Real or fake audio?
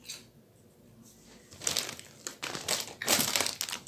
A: real